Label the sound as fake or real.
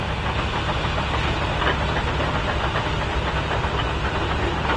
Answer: real